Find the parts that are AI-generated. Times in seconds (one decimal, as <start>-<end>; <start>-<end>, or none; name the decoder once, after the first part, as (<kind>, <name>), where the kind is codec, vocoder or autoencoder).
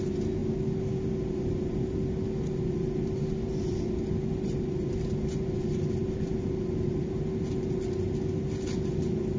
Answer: none